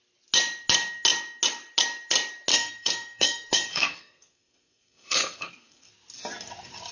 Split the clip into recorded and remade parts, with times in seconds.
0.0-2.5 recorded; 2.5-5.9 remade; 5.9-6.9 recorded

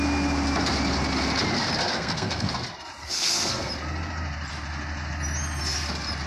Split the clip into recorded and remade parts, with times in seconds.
0.0-1.9 recorded; 1.9-2.5 remade; 2.5-3.0 recorded; 3.0-3.7 remade; 3.7-6.3 recorded

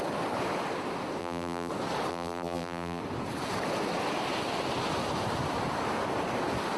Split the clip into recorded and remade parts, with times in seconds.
0.0-1.2 recorded; 1.2-1.7 remade; 1.7-2.1 recorded; 2.1-3.0 remade; 3.0-6.8 recorded

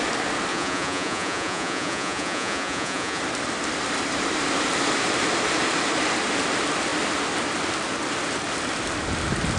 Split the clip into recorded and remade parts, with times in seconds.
0.0-0.5 recorded; 0.5-3.2 remade; 3.2-9.6 recorded

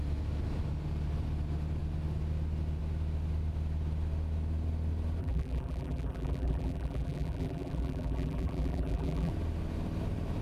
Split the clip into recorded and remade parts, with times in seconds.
0.0-5.2 recorded; 5.2-9.3 remade; 9.3-10.4 recorded

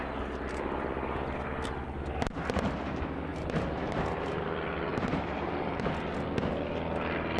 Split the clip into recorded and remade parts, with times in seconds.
0.0-3.3 recorded; 3.3-4.4 remade; 4.4-4.9 recorded; 4.9-5.9 remade; 5.9-7.4 recorded

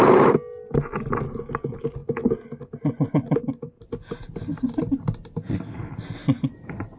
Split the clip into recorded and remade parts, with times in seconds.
0.0-6.2 recorded; 6.2-7.0 remade

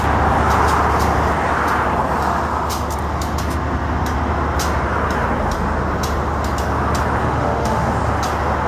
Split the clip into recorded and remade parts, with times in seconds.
0.0-7.2 recorded; 7.2-7.9 remade; 7.9-8.7 recorded